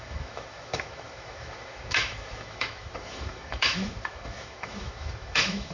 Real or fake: fake